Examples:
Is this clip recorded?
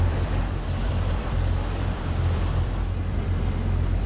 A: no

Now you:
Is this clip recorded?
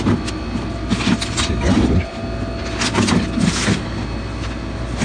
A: yes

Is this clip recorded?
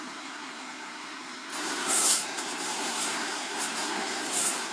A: no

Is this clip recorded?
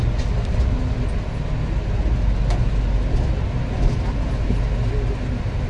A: yes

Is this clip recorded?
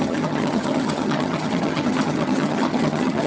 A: no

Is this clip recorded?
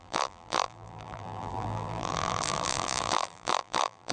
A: no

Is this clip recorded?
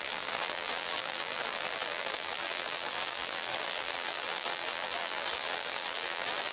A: no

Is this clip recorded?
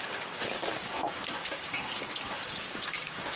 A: no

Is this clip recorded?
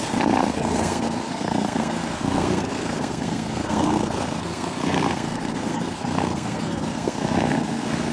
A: no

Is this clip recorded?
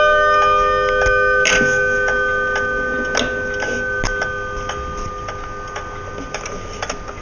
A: yes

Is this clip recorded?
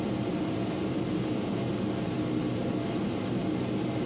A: yes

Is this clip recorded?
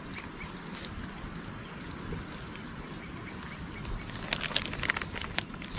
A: yes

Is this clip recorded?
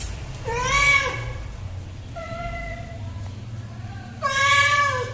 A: no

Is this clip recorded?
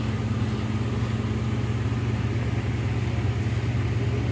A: yes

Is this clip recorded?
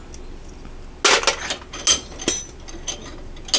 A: yes